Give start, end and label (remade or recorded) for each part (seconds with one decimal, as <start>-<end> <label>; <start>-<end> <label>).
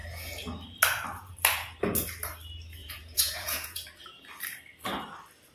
0.0-2.8 recorded; 2.8-4.3 remade; 4.3-5.5 recorded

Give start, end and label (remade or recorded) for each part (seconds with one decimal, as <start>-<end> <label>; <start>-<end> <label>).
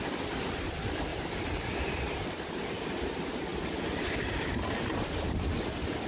0.0-6.1 recorded